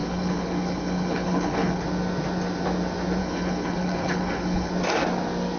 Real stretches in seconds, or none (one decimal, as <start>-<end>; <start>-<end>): 1.8-3.2; 4.7-5.6